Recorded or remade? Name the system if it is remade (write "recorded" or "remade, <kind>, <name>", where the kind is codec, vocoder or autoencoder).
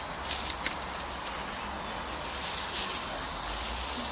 recorded